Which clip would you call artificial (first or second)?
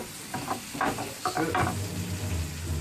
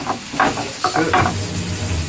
first